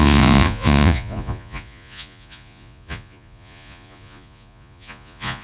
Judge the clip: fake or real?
fake